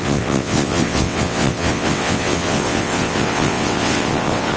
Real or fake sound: fake